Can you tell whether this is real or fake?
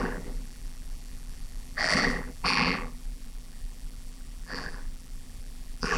fake